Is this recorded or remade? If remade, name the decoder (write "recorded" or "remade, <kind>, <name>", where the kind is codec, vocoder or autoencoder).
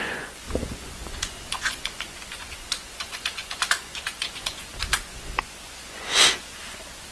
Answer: remade, vocoder, Vocos